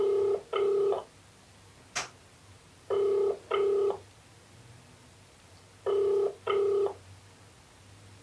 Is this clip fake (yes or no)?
no